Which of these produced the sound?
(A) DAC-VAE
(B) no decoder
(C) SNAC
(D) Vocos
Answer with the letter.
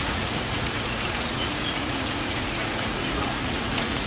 D